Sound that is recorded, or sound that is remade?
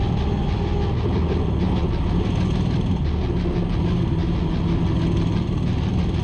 recorded